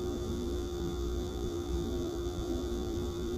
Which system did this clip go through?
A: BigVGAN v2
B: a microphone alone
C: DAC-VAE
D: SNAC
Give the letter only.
A